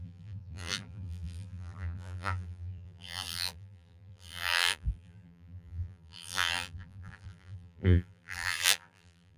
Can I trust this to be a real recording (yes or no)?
no